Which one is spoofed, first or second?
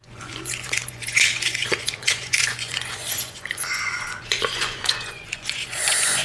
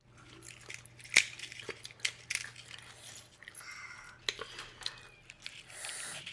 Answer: first